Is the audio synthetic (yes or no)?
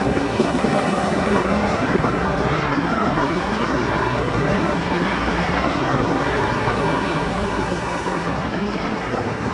yes